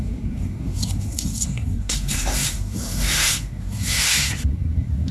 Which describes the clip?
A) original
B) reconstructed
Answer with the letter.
B